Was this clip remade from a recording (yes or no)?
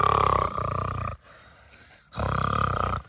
yes